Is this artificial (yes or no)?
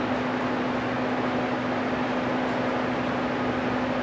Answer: no